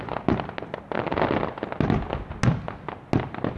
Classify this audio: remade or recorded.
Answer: recorded